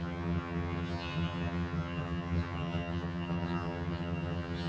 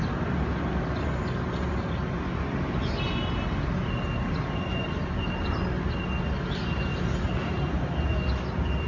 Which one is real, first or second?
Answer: second